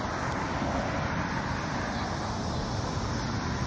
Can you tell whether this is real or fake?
real